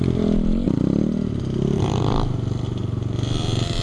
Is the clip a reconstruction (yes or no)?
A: no